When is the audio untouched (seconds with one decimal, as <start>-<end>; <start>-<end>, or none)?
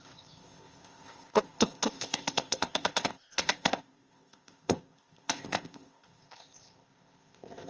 none